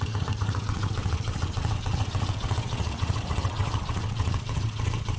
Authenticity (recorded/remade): remade